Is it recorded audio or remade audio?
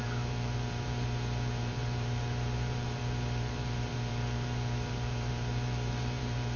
remade